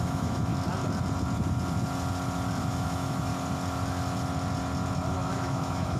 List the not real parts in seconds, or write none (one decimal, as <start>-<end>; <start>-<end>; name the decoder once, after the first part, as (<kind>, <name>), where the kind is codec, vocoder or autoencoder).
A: 0.0-0.5 (autoencoder, DAC-VAE); 2.6-3.3; 5.1-6.0